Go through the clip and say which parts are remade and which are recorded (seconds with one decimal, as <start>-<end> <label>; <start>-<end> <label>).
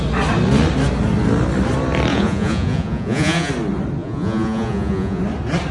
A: 0.0-2.1 recorded; 2.1-3.5 remade; 3.5-4.0 recorded; 4.0-5.2 remade; 5.2-5.7 recorded